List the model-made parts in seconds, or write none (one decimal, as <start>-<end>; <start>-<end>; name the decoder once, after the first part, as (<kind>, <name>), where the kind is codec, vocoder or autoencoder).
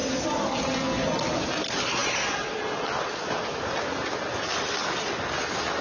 none